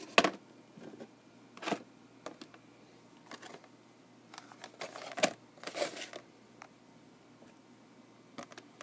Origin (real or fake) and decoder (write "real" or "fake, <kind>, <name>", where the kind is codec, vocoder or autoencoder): real